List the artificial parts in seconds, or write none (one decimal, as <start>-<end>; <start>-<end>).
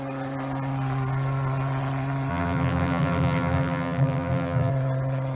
2.3-4.7